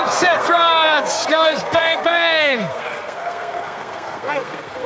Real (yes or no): no